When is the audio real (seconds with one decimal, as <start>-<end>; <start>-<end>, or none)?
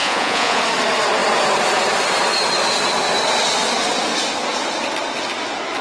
0.6-5.8